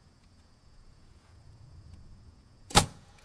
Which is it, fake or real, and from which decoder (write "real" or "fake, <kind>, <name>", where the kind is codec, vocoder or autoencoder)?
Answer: fake, vocoder, Vocos